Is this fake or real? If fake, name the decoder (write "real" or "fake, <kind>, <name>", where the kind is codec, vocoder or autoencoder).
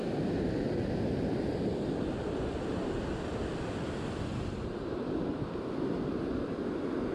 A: real